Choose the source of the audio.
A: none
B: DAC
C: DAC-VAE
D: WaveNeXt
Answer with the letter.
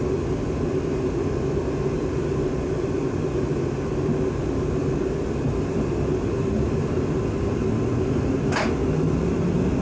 A